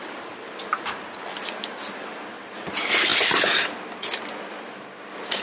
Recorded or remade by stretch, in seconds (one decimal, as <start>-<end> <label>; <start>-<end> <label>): 0.0-5.4 recorded